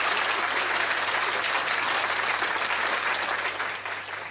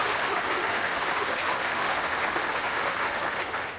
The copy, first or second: second